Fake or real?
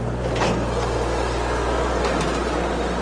real